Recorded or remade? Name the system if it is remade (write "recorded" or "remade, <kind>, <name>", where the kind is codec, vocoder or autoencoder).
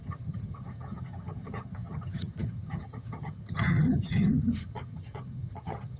remade, vocoder, HiFi-GAN